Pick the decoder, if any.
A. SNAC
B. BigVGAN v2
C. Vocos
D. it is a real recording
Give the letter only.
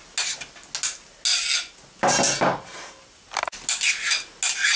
D